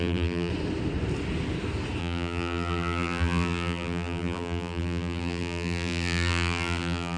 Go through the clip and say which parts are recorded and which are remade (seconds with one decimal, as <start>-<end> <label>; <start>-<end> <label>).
0.0-0.5 remade; 0.5-2.0 recorded; 2.0-7.2 remade